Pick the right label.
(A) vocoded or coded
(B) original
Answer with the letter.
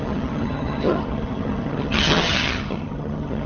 A